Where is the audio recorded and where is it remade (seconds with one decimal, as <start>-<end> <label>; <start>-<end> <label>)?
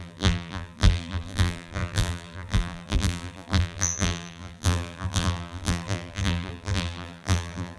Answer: 0.0-7.8 remade